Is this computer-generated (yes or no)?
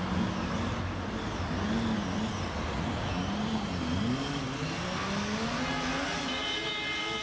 no